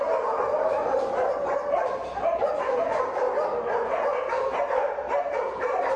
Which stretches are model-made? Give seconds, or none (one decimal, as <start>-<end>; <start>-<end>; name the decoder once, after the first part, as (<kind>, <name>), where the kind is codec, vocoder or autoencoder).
none